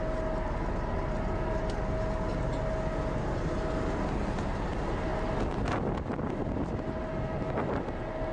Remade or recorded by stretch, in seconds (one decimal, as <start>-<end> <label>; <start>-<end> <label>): 0.0-8.3 recorded